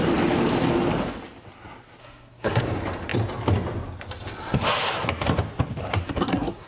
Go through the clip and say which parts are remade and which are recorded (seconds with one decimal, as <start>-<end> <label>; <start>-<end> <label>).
0.0-2.0 recorded; 2.0-2.6 remade; 2.6-5.8 recorded; 5.8-6.7 remade